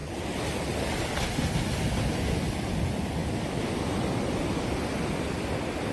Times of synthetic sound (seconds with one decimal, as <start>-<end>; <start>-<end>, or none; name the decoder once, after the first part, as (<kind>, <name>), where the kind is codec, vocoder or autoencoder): none